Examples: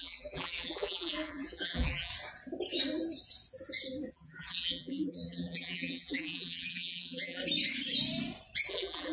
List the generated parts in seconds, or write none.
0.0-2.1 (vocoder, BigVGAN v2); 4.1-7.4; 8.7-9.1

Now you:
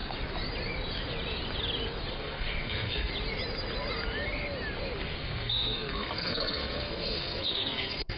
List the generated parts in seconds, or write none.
2.1-3.1 (codec, SNAC); 5.0-8.2

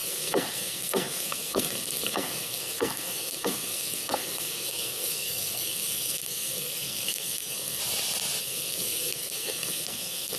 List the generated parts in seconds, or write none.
0.0-7.8 (codec, SNAC); 8.4-10.4